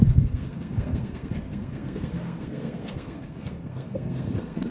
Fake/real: fake